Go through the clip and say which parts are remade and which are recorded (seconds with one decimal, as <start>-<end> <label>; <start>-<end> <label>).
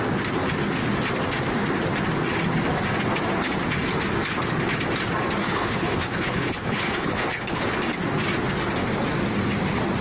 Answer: 0.0-5.4 recorded; 5.4-7.6 remade; 7.6-10.0 recorded